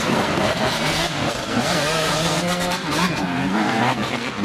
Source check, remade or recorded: remade